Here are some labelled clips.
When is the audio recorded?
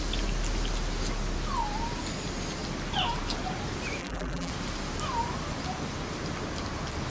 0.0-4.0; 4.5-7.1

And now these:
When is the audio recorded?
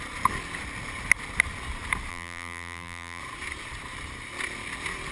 0.0-2.1; 3.2-5.1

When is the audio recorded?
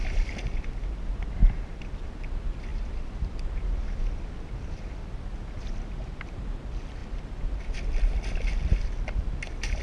1.8-2.7; 6.1-9.8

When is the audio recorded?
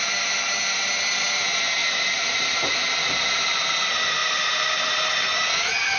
0.0-1.8; 2.9-4.2; 4.9-6.0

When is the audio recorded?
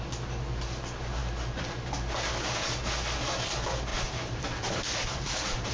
0.0-3.9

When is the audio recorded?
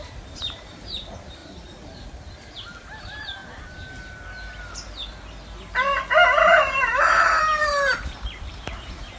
1.4-2.8; 3.4-6.5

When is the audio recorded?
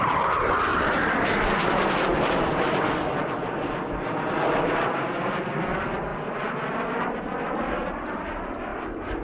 0.0-0.7; 3.7-9.2